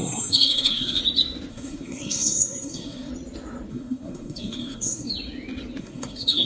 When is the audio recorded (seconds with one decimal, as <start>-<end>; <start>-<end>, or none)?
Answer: 1.0-1.5; 3.1-3.7; 5.1-5.8